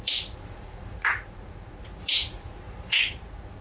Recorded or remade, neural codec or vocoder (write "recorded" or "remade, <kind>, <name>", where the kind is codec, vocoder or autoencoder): remade, vocoder, Vocos